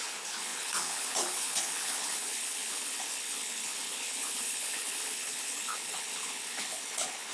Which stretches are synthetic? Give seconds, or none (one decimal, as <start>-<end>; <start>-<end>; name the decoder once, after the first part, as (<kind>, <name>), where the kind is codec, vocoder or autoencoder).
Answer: 0.0-7.3 (codec, HILCodec)

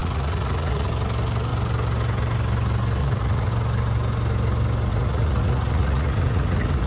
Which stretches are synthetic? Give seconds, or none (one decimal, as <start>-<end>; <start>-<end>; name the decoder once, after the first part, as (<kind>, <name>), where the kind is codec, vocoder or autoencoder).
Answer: 0.0-0.9 (vocoder, Vocos); 3.0-3.5; 4.9-6.9

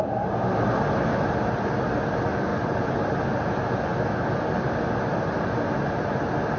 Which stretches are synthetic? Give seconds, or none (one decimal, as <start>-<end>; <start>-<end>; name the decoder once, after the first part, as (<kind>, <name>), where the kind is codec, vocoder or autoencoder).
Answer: none

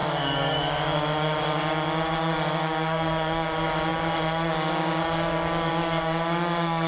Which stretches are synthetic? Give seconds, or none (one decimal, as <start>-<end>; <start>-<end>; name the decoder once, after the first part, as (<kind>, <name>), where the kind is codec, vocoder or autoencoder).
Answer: 0.0-6.9 (codec, DAC)

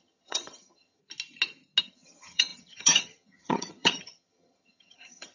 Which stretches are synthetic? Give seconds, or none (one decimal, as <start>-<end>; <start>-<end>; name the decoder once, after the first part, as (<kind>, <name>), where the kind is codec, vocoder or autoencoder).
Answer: 0.0-1.0 (vocoder, HiFi-GAN); 1.8-5.3

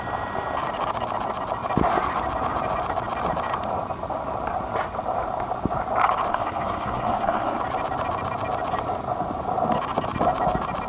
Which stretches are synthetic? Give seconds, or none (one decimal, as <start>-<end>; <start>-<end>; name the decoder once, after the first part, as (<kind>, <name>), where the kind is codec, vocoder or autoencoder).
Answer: 6.3-7.6 (codec, SNAC)

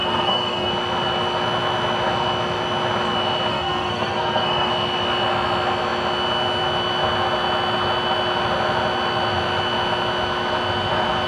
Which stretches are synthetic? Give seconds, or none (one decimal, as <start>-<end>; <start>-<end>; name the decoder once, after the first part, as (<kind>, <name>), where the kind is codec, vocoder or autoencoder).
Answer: 0.0-0.7 (codec, SNAC); 3.5-4.7

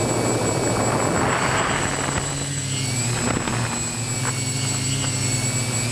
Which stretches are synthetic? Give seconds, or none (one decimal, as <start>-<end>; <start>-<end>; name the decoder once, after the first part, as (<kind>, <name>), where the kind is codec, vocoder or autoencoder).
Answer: none